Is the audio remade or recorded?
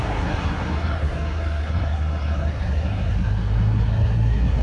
remade